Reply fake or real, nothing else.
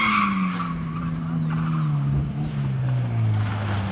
real